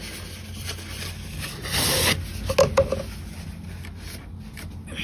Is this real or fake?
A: real